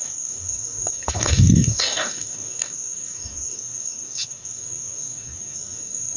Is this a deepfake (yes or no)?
yes